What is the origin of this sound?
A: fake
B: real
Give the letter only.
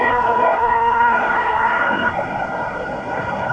A